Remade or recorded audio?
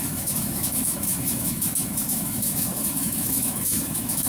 remade